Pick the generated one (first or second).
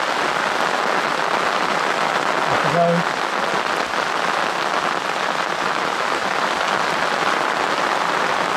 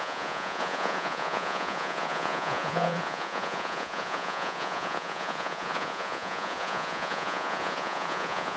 second